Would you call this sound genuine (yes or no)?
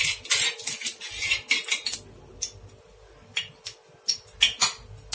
yes